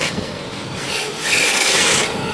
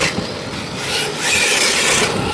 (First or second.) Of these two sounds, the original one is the second